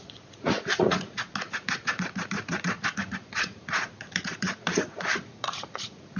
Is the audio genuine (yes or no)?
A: no